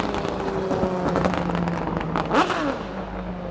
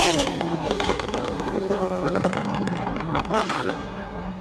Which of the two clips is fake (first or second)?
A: second